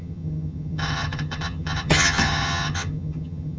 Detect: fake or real fake